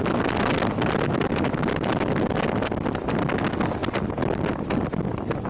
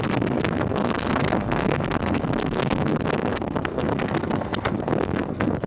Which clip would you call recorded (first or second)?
first